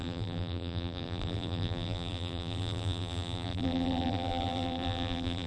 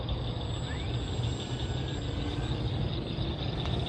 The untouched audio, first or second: second